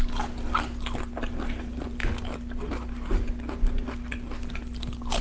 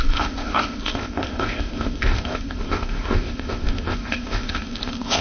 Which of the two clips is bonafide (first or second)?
first